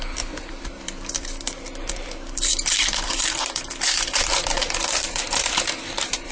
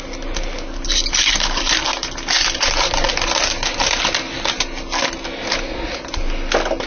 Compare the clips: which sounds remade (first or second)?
first